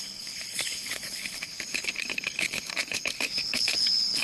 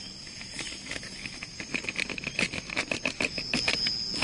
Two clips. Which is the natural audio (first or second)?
second